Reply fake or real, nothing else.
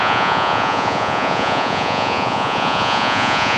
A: fake